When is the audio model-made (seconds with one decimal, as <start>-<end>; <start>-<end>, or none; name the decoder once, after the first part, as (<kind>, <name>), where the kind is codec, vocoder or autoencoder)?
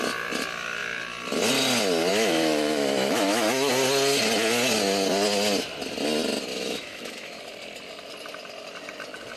2.1-3.7 (autoencoder, DAC-VAE); 6.5-7.4